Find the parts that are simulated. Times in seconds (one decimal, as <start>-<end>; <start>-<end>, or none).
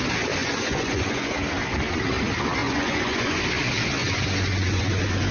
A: 0.4-1.3; 2.6-3.4; 4.0-4.8